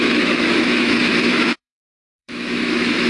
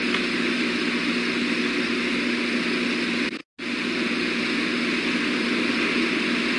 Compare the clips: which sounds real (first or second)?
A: second